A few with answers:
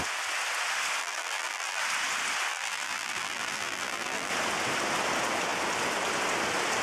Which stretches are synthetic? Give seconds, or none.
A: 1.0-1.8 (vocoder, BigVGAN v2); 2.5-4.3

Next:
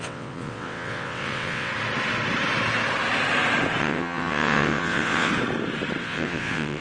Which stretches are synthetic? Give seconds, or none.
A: 0.0-1.7 (vocoder, WaveNeXt); 3.8-5.3; 6.0-6.8

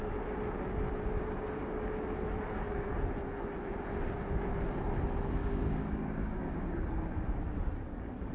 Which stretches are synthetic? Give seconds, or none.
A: 5.4-6.9 (codec, DAC)

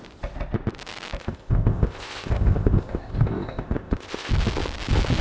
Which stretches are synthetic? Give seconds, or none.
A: 1.2-4.3 (codec, ZipCodec)

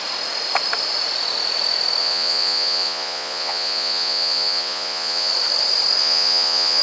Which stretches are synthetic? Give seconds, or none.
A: 2.0-5.3 (vocoder, Vocos); 6.0-6.8

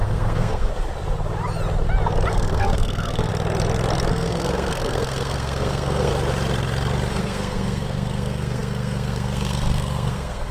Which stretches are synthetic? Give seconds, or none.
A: 0.0-0.7 (codec, SNAC); 2.3-3.3; 4.1-6.1; 7.1-10.5

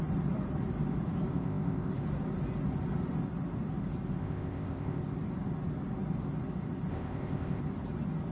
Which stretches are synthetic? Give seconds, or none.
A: 1.3-1.9 (codec, ZipCodec); 4.2-5.0; 6.9-7.6

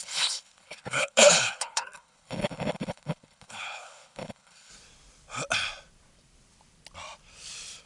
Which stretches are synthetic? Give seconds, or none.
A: 0.0-4.7 (codec, HILCodec)